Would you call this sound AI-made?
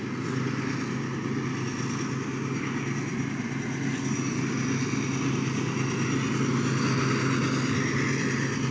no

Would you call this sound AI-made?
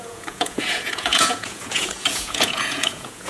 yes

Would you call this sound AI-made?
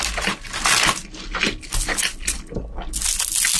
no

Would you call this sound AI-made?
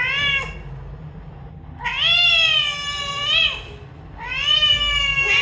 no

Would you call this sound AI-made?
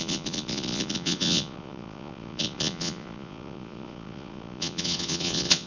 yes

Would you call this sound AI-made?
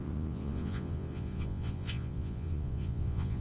yes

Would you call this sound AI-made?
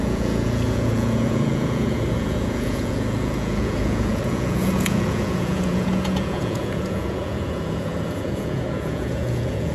yes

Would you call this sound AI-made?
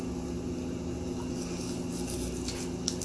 no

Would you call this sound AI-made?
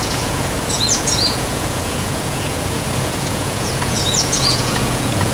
yes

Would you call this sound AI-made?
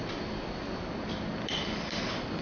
no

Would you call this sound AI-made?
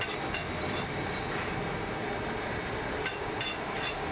no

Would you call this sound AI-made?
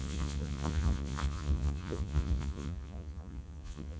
yes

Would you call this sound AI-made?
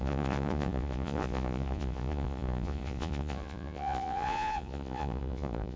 yes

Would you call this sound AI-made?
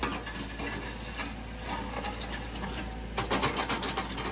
no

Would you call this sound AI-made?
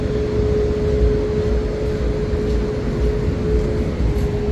no